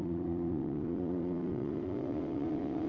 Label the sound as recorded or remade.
remade